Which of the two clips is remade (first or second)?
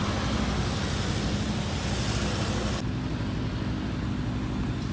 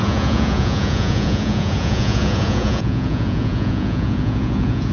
second